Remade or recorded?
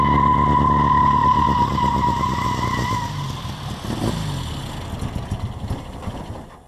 recorded